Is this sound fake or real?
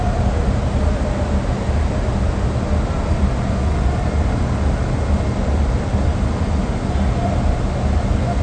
real